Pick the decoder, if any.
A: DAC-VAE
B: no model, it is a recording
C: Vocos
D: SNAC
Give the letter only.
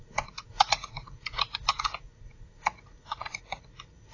C